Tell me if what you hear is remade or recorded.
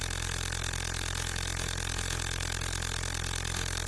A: remade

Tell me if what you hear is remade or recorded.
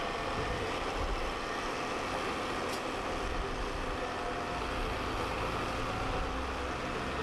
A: recorded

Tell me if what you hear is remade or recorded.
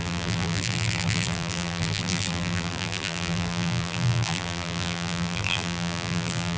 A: remade